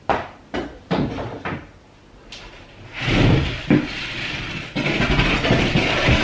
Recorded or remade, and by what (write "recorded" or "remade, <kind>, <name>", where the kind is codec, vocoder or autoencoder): recorded